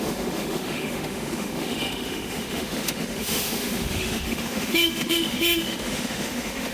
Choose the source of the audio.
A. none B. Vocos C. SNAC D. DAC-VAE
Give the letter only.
D